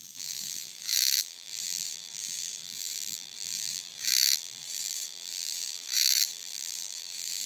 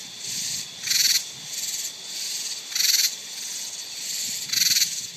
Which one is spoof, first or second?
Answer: first